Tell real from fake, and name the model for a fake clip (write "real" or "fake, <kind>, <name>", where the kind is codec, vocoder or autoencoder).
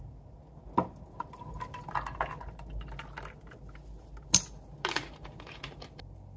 real